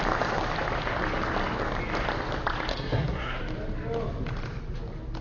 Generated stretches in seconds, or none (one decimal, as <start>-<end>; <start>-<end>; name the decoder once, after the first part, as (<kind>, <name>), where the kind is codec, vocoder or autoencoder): 2.7-3.4 (codec, SNAC)